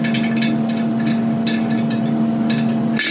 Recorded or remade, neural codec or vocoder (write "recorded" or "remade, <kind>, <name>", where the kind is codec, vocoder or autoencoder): recorded